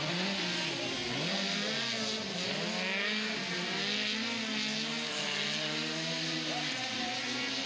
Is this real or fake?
real